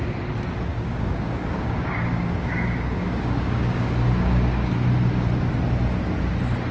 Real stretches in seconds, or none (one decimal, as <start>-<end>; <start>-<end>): 0.0-0.7; 4.7-6.7